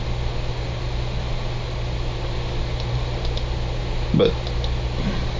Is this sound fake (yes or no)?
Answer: no